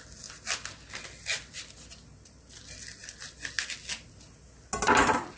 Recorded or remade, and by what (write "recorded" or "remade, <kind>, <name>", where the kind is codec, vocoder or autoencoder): recorded